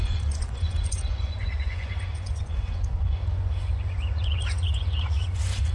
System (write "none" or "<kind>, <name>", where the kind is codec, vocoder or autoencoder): vocoder, Vocos